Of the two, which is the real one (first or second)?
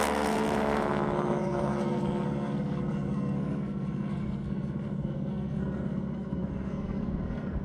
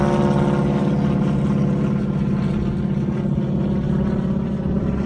second